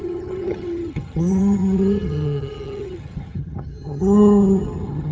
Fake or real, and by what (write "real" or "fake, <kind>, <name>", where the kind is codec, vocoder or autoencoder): fake, vocoder, HiFi-GAN